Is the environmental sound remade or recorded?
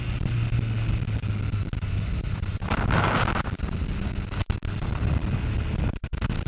recorded